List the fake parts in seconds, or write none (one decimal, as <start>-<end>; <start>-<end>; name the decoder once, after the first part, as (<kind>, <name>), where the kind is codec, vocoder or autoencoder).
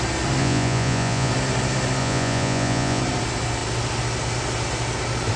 0.4-1.3 (vocoder, Vocos); 2.0-3.0